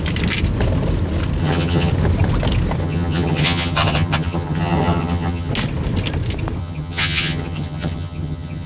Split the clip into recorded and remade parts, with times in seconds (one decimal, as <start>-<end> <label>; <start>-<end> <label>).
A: 0.0-1.4 recorded; 1.4-1.9 remade; 1.9-2.8 recorded; 2.8-5.5 remade; 5.5-6.6 recorded; 6.6-8.7 remade